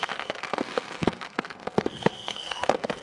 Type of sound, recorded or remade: remade